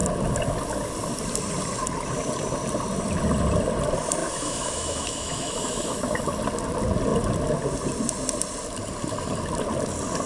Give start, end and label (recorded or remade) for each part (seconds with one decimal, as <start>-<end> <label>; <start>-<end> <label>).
0.0-4.2 recorded; 4.2-6.2 remade; 6.2-10.3 recorded

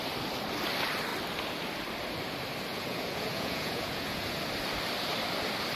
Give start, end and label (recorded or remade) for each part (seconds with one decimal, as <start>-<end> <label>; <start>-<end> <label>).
0.0-2.7 recorded; 2.7-4.2 remade; 4.2-5.7 recorded

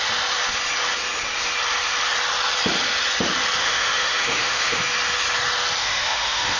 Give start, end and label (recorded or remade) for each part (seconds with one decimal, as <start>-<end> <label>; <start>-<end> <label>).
0.0-3.6 recorded; 3.6-4.8 remade; 4.8-5.8 recorded; 5.8-6.6 remade

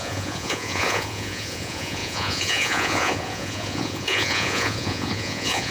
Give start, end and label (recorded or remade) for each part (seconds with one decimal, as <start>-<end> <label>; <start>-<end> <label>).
0.0-5.7 remade